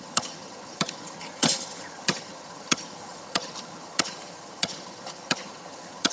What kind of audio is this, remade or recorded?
remade